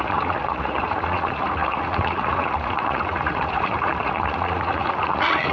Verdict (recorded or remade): remade